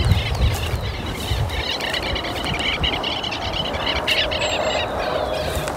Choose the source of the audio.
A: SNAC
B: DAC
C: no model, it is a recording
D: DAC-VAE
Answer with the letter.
C